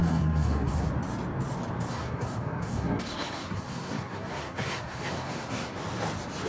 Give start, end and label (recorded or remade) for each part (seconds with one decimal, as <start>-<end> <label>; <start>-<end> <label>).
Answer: 0.0-0.9 remade; 0.9-1.9 recorded; 1.9-5.8 remade; 5.8-6.5 recorded